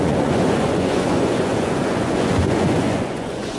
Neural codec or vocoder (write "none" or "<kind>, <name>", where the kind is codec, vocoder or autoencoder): vocoder, Vocos